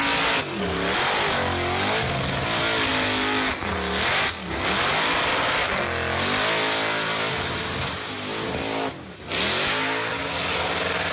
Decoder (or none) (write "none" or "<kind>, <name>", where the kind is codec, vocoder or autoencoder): none